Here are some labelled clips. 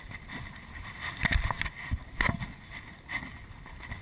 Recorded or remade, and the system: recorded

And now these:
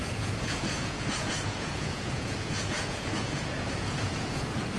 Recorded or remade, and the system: remade, vocoder, Vocos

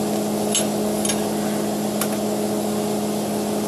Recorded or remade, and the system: recorded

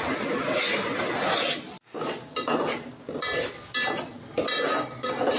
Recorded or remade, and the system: recorded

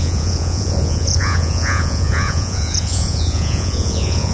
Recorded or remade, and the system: remade, vocoder, Vocos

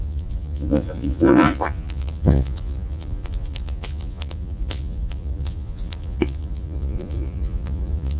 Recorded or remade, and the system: remade, vocoder, Vocos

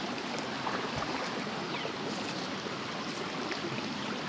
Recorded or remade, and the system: recorded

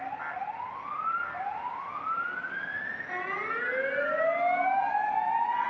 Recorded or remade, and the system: recorded